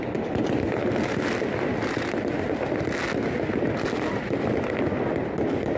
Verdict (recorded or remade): recorded